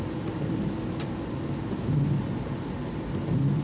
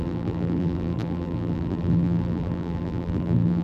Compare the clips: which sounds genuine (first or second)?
first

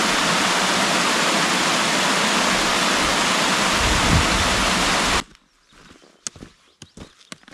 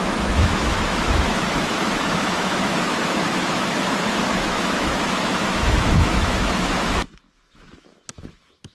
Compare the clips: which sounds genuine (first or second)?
first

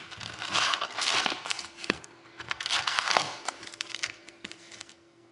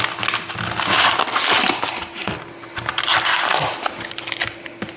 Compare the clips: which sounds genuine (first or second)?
second